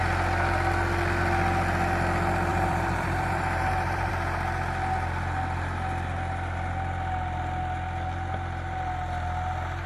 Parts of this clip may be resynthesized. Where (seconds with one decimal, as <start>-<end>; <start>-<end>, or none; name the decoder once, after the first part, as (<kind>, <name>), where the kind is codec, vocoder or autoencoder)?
2.5-4.1 (vocoder, BigVGAN v2)